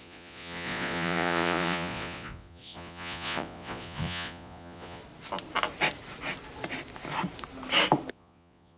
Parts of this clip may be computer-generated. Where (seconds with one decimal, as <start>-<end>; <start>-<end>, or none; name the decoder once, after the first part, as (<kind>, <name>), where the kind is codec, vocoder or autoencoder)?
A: 0.0-5.0 (vocoder, Vocos); 8.1-8.8